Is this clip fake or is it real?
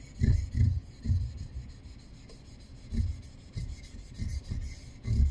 real